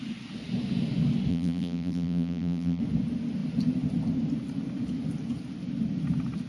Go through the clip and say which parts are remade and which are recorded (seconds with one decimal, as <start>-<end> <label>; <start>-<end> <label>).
0.0-1.3 recorded; 1.3-2.8 remade; 2.8-6.5 recorded